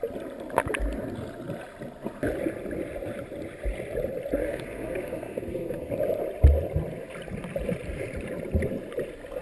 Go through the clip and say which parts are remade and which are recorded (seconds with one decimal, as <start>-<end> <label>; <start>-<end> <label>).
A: 0.0-4.4 recorded; 4.4-5.9 remade; 5.9-9.4 recorded